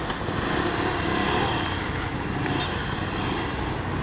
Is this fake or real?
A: real